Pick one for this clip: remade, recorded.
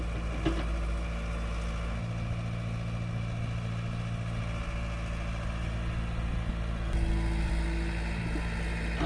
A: recorded